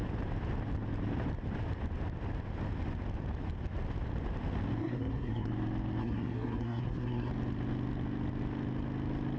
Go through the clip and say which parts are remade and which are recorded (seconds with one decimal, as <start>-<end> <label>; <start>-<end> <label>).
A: 0.0-4.8 recorded; 4.8-5.5 remade; 5.5-6.0 recorded; 6.0-7.3 remade; 7.3-9.4 recorded